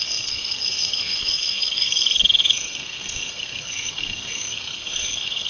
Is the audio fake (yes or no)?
yes